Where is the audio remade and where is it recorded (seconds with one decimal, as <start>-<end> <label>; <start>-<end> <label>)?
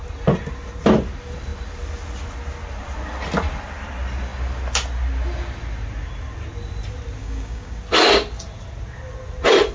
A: 0.0-7.2 recorded; 7.2-7.8 remade; 7.8-9.7 recorded